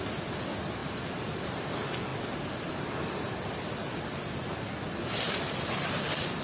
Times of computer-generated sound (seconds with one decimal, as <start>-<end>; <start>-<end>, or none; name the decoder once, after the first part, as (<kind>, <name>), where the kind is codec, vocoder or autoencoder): none